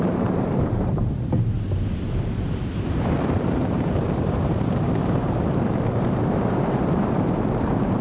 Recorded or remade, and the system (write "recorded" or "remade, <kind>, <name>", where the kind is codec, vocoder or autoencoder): remade, vocoder, BigVGAN v2